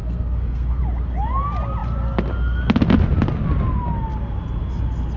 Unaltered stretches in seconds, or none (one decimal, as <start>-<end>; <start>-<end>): 0.8-5.2